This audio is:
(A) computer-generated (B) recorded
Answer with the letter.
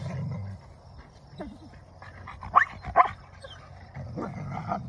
B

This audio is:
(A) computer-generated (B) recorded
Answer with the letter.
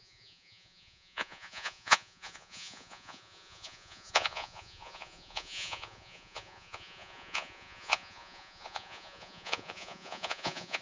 A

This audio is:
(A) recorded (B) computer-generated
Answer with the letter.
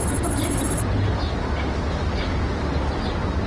A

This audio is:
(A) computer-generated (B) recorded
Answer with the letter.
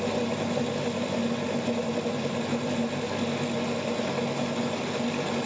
B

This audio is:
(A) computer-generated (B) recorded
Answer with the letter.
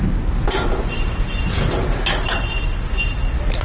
B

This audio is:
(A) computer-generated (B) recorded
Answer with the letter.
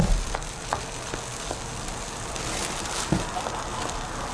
B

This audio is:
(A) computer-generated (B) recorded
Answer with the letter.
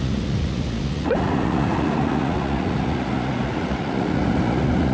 A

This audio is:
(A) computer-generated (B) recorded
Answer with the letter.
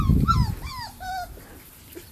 B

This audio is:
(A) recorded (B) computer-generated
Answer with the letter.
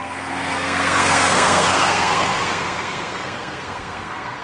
B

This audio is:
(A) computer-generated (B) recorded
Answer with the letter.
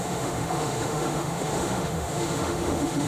A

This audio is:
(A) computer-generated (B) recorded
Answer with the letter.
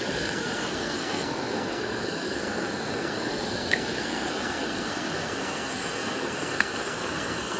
A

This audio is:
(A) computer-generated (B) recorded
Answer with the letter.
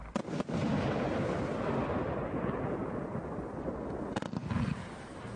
B